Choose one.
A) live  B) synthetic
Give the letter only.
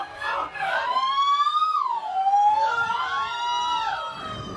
A